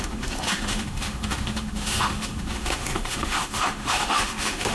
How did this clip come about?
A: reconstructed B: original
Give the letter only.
A